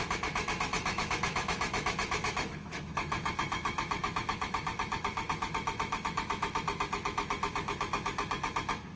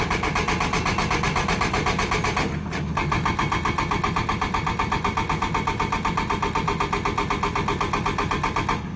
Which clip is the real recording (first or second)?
second